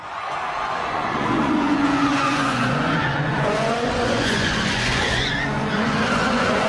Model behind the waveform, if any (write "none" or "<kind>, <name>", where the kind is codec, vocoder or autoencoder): vocoder, Vocos